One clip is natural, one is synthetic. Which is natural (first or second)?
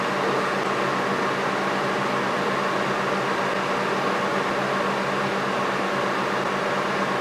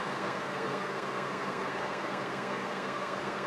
first